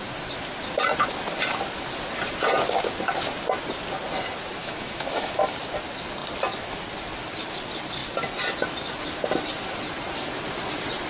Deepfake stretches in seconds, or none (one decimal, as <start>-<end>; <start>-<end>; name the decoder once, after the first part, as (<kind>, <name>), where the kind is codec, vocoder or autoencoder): 4.6-5.5 (autoencoder, DAC-VAE)